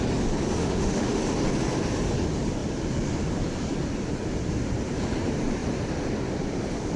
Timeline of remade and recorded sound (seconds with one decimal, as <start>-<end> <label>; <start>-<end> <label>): 0.0-0.6 recorded; 0.6-1.2 remade; 1.2-7.0 recorded